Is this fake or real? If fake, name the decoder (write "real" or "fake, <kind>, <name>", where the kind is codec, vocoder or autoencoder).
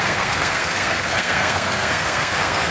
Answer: fake, codec, SNAC